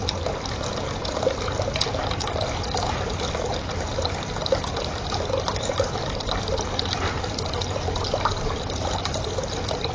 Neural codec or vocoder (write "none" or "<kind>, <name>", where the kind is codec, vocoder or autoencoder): none